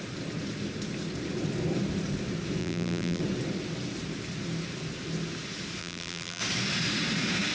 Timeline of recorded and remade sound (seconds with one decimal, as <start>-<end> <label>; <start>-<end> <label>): 0.0-2.6 recorded; 2.6-3.2 remade; 3.2-5.8 recorded; 5.8-6.4 remade; 6.4-7.5 recorded